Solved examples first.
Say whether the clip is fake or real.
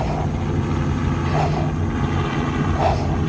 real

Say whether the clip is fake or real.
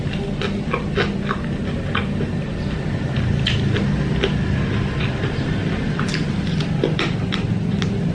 real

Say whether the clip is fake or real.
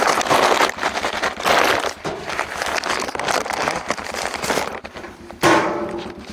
real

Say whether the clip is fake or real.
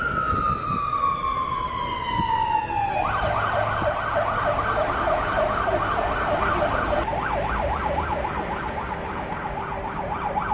real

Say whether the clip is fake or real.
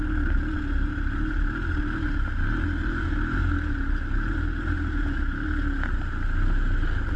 real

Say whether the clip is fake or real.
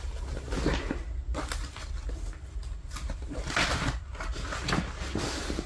real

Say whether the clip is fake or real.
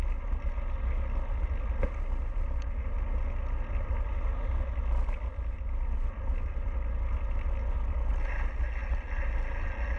real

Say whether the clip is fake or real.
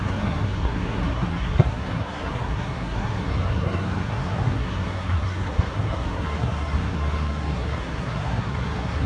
fake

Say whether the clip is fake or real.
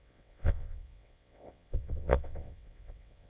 fake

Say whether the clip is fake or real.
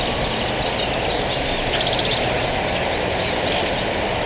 real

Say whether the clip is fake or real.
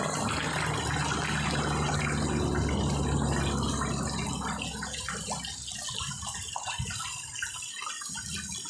real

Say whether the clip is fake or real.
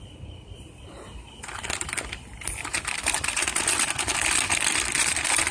real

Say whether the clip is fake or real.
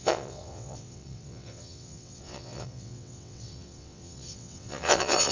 fake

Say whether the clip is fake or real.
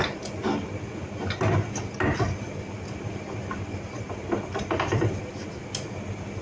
real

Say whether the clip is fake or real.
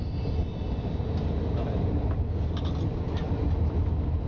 real